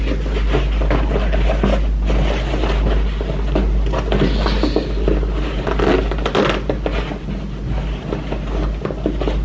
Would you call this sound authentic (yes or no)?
yes